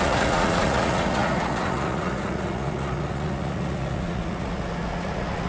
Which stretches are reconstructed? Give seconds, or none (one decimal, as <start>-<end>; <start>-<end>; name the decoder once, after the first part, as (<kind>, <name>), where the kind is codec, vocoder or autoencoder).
0.0-5.5 (vocoder, Vocos)